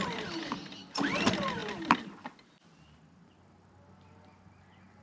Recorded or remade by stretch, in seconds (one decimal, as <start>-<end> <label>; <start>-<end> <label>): 0.0-5.0 recorded

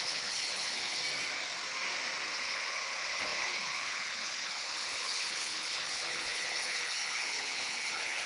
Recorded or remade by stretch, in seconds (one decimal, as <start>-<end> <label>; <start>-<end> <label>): 0.0-1.0 remade; 1.0-2.3 recorded; 2.3-8.3 remade

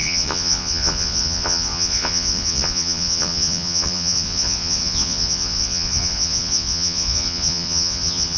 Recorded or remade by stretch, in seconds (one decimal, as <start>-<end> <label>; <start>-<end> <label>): 0.0-8.4 remade

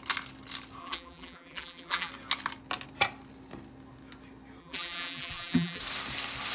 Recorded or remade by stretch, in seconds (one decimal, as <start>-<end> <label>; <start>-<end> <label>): 0.0-0.8 recorded; 0.8-2.1 remade; 2.1-4.6 recorded; 4.6-5.8 remade; 5.8-6.5 recorded

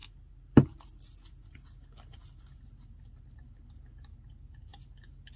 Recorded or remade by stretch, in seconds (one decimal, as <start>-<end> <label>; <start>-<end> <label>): 0.0-5.4 recorded

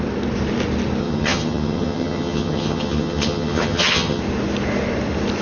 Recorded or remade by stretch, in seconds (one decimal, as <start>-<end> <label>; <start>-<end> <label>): 0.0-1.0 recorded; 1.0-4.2 remade; 4.2-5.4 recorded

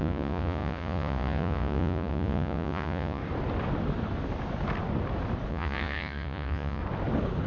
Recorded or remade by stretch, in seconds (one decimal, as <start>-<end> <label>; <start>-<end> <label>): 0.0-3.2 remade; 3.2-5.5 recorded; 5.5-6.8 remade; 6.8-7.5 recorded